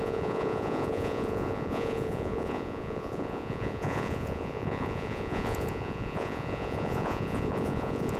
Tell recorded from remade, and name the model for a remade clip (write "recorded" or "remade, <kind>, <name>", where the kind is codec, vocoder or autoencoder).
remade, vocoder, Vocos